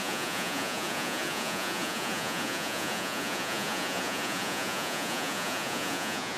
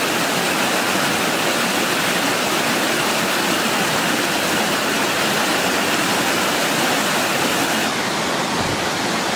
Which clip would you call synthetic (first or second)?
first